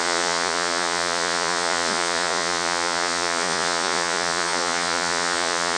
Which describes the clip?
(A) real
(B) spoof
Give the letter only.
B